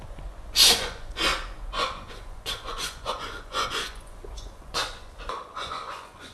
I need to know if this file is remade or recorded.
remade